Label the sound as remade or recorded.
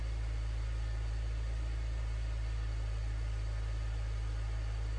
recorded